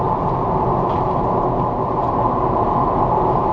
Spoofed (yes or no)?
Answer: no